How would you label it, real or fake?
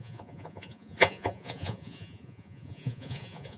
fake